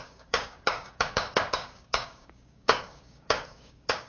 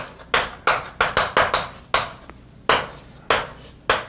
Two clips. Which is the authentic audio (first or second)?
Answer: second